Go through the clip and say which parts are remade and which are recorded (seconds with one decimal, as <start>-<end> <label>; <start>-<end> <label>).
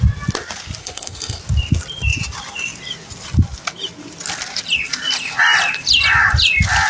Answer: 0.0-0.8 recorded; 0.8-1.4 remade; 1.4-6.9 recorded